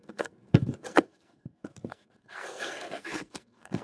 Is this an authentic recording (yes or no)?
no